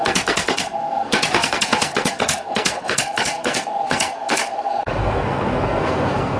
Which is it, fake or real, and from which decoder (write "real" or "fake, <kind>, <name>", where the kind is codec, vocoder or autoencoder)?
fake, codec, SNAC